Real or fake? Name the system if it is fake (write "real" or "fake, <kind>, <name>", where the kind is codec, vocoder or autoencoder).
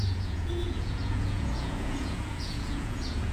fake, vocoder, Vocos